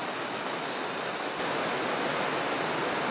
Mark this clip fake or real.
real